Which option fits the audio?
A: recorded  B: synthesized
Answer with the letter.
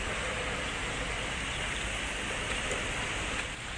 A